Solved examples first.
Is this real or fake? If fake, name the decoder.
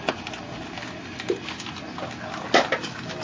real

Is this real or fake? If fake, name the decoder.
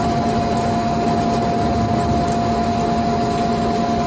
real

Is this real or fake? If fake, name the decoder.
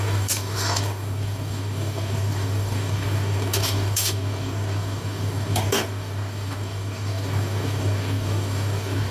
fake, codec, DAC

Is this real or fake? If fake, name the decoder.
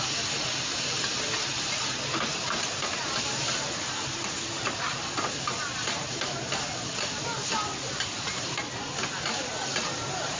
real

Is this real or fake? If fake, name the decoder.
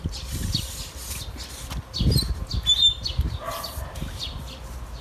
real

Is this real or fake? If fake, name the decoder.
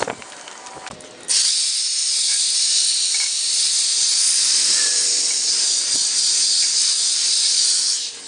real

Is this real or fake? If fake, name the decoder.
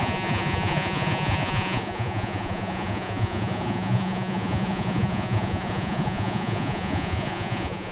fake, vocoder, Vocos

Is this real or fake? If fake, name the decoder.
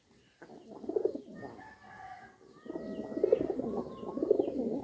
real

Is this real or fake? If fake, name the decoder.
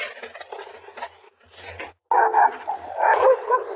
real